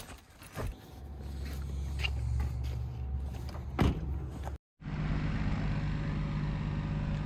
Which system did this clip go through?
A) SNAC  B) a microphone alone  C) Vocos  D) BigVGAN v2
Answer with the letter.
B